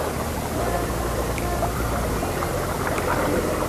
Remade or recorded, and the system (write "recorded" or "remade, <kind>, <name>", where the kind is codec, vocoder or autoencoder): recorded